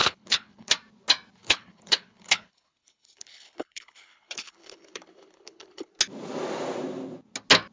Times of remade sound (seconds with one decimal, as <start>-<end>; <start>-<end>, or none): 0.0-0.7; 1.4-5.9

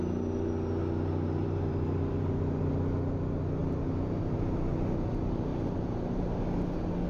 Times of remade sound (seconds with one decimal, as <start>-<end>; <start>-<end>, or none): 1.4-2.6; 3.6-4.2; 5.5-6.4